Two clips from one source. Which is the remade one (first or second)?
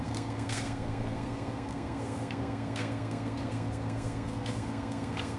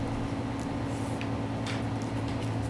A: first